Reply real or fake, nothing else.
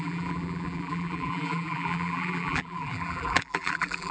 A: fake